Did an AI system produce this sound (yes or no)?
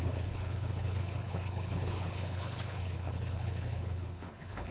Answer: yes